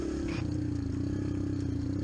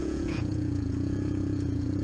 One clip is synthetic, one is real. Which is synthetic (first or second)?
second